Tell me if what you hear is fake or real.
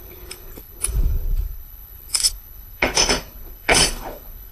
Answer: fake